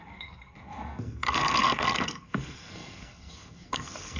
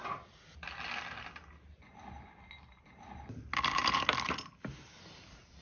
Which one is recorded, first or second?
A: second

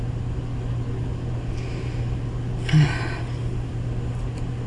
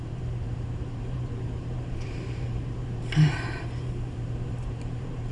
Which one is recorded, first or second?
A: first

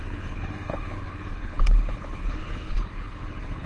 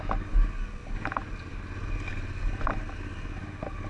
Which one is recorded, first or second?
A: second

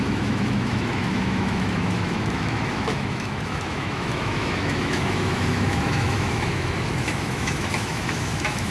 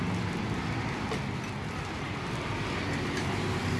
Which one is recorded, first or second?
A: second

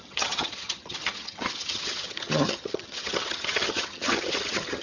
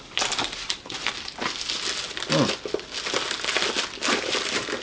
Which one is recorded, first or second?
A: second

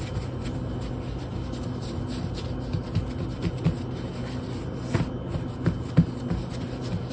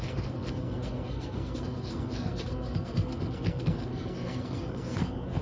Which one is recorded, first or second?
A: first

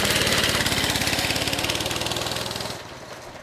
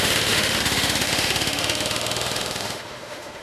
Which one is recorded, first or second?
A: first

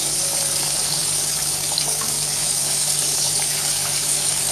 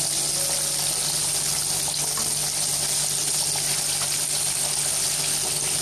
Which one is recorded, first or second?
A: second